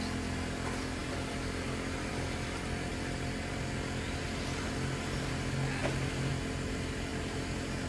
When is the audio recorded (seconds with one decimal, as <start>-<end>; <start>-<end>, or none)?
0.0-7.9

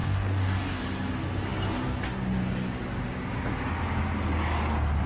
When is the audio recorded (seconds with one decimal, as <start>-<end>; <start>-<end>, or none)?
0.8-5.1

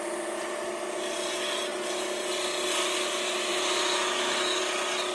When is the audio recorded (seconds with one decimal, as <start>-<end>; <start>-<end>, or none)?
0.0-3.5; 4.6-5.1

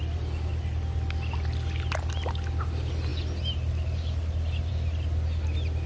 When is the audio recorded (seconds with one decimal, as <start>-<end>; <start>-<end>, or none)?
0.0-5.9

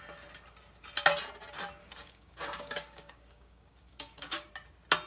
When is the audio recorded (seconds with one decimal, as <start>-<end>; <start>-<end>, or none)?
0.0-1.8; 4.5-5.1

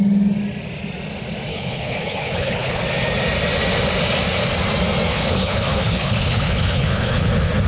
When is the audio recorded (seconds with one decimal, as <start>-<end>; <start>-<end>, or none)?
0.0-1.5; 2.8-5.1; 7.3-7.7

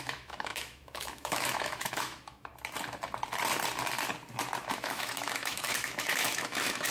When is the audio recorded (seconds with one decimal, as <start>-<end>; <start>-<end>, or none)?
2.5-4.7

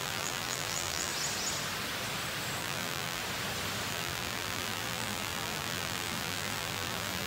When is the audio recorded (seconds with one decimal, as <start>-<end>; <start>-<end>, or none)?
1.1-2.6; 3.2-3.9